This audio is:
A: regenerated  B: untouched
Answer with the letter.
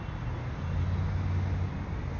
B